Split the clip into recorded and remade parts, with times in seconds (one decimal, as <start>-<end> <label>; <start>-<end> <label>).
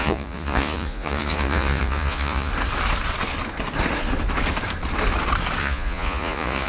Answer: 0.0-2.5 remade; 2.5-5.6 recorded; 5.6-6.7 remade